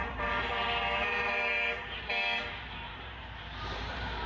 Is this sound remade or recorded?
remade